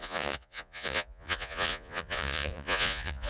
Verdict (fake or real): fake